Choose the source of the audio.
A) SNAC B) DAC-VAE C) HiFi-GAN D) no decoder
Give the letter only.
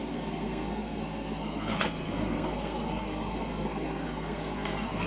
A